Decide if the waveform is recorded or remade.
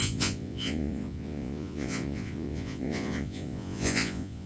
remade